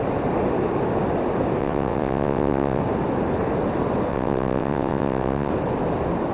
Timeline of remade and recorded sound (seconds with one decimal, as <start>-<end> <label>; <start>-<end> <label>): 0.0-1.6 recorded; 1.6-2.8 remade; 2.8-4.1 recorded; 4.1-5.5 remade; 5.5-6.3 recorded